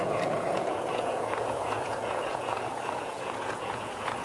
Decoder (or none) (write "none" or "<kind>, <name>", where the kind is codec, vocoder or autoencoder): vocoder, Vocos